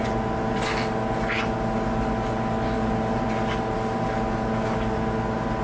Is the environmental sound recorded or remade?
recorded